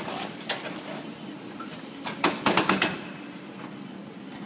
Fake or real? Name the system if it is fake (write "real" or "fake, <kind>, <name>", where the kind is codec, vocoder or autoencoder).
real